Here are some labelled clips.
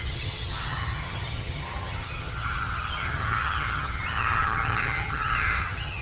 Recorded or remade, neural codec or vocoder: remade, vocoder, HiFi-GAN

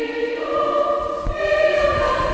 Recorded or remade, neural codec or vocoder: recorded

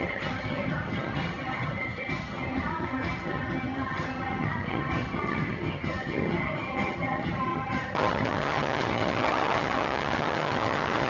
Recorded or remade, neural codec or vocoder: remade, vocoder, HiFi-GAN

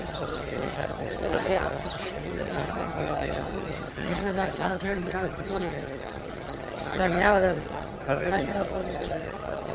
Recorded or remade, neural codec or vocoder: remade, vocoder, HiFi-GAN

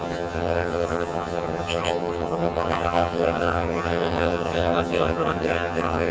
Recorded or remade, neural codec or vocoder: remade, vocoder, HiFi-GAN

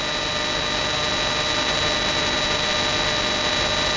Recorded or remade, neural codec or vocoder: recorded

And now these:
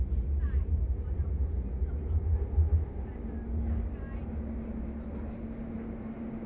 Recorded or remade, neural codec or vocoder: recorded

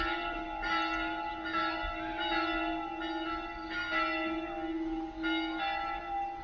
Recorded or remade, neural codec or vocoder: recorded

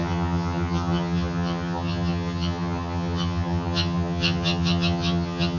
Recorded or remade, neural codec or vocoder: remade, vocoder, HiFi-GAN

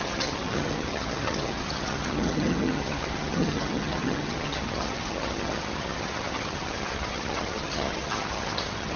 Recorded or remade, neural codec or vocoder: remade, vocoder, HiFi-GAN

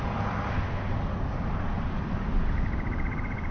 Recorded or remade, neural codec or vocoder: recorded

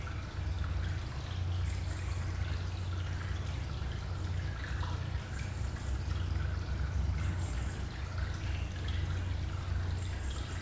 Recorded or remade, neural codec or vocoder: recorded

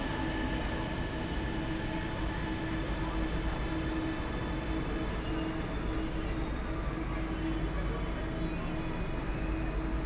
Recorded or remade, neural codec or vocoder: recorded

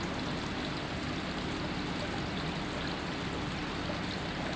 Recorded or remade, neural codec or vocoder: recorded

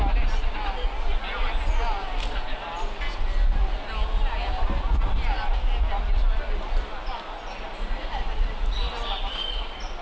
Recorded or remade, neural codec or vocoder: recorded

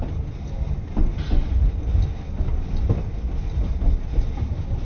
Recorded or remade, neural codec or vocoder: recorded